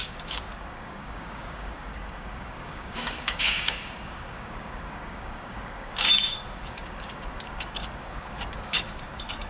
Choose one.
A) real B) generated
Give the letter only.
B